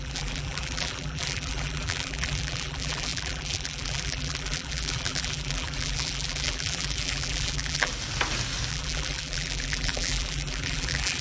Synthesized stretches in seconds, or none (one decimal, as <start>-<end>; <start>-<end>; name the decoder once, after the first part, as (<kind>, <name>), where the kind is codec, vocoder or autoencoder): 0.0-7.9 (vocoder, BigVGAN v2); 8.7-11.2